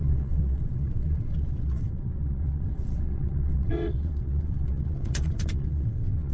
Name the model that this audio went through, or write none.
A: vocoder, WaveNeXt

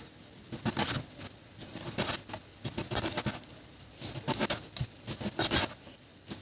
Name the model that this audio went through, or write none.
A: none